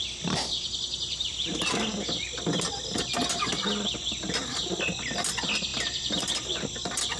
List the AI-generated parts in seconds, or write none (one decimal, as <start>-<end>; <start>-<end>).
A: none